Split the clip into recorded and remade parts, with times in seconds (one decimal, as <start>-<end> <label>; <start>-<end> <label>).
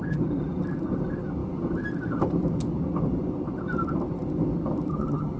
0.0-4.9 recorded; 4.9-5.4 remade